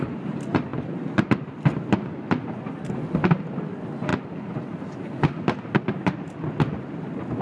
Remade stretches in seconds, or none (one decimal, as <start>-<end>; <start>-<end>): none